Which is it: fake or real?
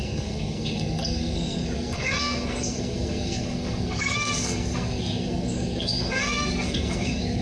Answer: fake